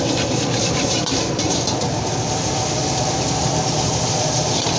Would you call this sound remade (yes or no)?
yes